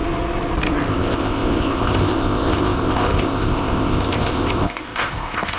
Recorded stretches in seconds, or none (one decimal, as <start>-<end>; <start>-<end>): 0.0-0.9